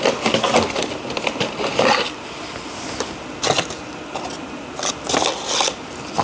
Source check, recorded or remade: recorded